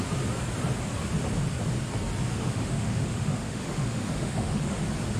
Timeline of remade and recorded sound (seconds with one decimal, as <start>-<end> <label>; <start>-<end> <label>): 0.0-2.3 recorded; 2.3-4.8 remade; 4.8-5.2 recorded